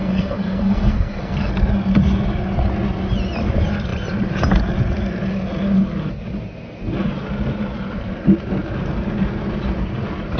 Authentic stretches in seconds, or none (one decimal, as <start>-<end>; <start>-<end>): 1.5-10.4

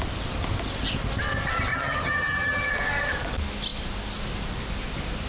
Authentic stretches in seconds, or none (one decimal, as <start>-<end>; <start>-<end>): 0.0-1.7; 2.7-5.3